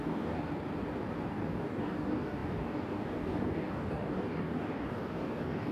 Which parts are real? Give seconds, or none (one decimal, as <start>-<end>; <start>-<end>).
0.5-1.3